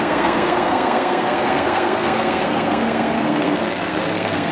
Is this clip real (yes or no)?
no